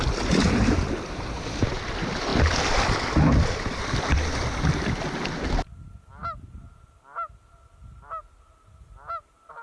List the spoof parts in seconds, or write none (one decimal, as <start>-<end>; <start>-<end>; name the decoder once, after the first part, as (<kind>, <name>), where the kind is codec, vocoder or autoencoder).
none